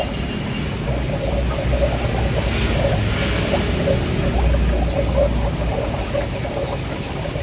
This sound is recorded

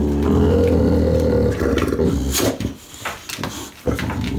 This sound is recorded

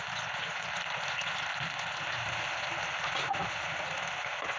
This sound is recorded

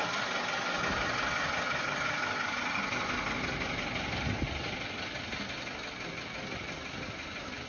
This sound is recorded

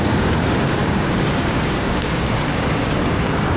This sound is remade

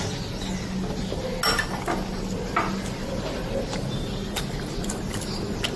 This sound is recorded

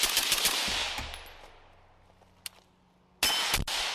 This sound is recorded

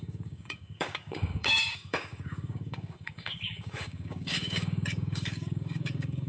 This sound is remade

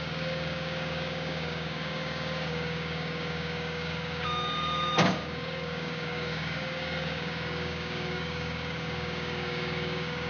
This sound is remade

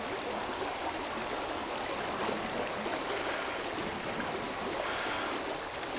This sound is recorded